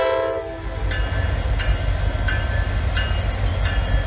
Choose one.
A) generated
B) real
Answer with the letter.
B